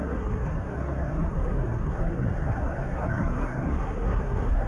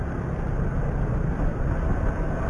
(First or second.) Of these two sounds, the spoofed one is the first